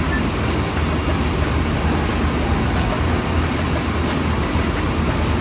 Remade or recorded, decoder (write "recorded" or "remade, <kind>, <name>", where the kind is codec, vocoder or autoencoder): recorded